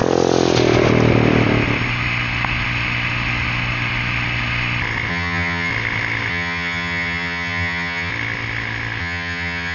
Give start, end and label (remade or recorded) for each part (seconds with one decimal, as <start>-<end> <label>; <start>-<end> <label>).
0.0-5.1 recorded; 5.1-5.7 remade; 5.7-6.3 recorded; 6.3-8.1 remade; 8.1-9.0 recorded; 9.0-9.7 remade